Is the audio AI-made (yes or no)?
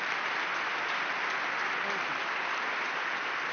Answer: no